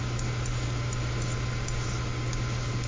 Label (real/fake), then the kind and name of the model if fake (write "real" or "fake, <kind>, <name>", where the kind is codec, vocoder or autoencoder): real